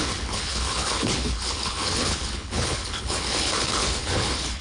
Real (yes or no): no